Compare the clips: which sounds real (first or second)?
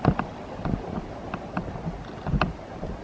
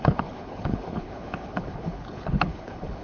first